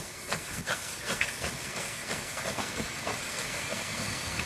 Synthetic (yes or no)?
yes